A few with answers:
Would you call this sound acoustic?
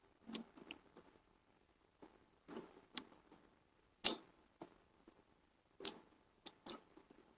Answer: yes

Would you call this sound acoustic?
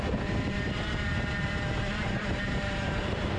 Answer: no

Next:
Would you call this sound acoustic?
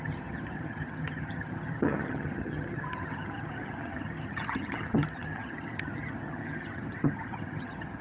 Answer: no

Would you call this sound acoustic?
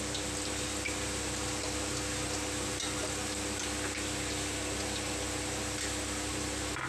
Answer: yes